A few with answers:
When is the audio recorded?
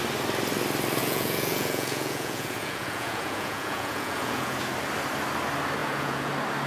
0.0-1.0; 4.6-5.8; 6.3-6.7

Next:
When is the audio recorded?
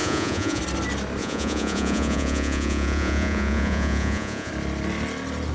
0.6-1.2; 4.5-5.5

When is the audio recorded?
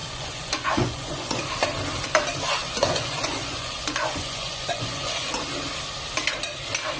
1.4-2.6; 5.3-7.0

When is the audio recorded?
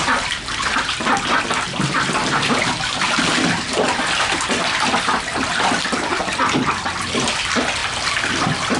0.0-8.8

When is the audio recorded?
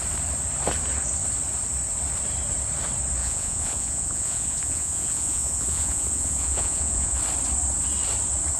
0.0-3.2; 7.2-8.6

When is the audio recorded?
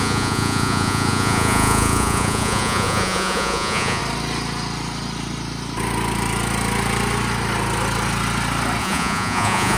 4.0-8.8